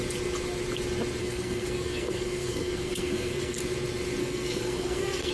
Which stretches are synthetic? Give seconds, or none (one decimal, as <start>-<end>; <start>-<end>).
1.2-3.6; 4.2-5.3